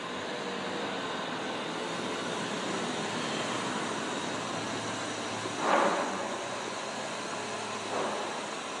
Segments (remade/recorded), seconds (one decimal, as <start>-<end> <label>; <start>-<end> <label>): 0.0-5.9 recorded; 5.9-7.2 remade; 7.2-8.8 recorded